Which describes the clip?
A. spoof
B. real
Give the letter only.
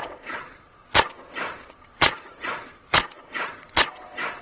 A